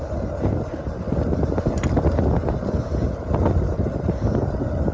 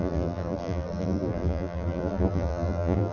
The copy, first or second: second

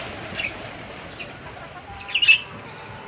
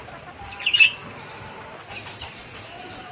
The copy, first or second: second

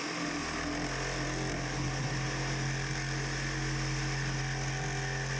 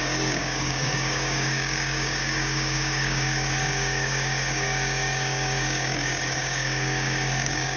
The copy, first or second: second